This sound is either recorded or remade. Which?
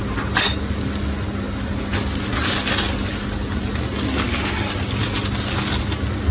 recorded